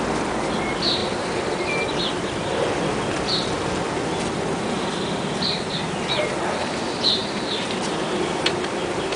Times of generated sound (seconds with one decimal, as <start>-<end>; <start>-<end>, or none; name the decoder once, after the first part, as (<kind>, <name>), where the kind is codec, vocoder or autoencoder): 0.0-1.0 (vocoder, BigVGAN v2); 4.6-9.2

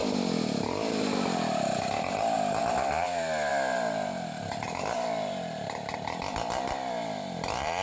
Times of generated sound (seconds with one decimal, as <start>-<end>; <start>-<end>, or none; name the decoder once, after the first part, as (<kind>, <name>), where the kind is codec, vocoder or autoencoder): 2.6-7.8 (vocoder, BigVGAN v2)